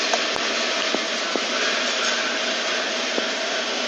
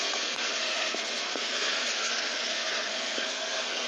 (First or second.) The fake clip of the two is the second